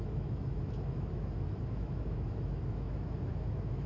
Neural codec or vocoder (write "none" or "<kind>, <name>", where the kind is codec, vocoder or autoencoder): autoencoder, DAC-VAE